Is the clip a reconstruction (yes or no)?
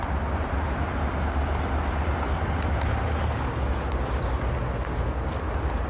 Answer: no